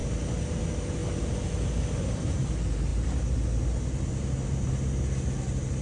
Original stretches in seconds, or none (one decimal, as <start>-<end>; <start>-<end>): 0.0-5.8